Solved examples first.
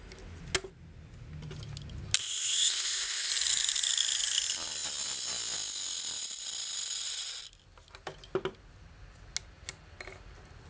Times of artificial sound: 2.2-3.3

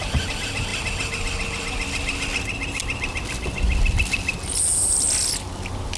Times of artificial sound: none

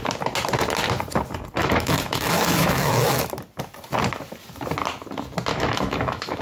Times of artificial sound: 1.6-3.3; 5.5-6.4

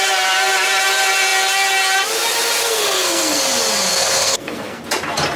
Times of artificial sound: 2.6-3.4; 3.9-4.8

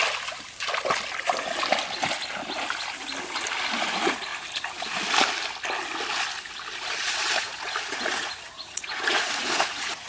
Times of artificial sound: 3.8-4.3; 7.1-10.1